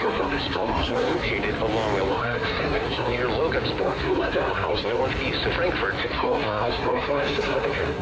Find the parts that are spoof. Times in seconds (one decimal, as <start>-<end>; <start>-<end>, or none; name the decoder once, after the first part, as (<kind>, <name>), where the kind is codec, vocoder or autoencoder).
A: 0.0-1.3 (codec, SNAC); 2.1-3.2; 3.8-5.0; 6.0-8.0